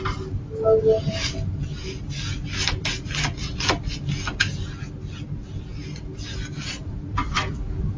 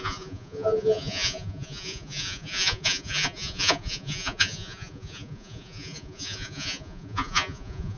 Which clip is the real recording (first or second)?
first